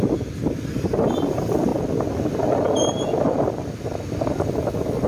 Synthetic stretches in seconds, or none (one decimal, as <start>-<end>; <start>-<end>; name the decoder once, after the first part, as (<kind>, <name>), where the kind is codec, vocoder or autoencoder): none